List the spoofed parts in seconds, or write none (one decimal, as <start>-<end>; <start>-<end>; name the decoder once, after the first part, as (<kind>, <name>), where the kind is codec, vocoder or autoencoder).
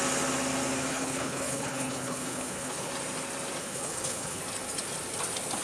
0.9-2.9 (codec, HILCodec); 3.6-4.4